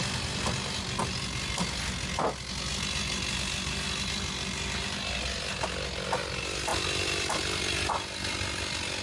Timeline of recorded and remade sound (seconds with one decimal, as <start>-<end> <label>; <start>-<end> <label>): 0.0-9.0 recorded